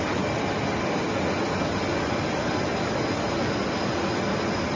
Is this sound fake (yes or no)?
no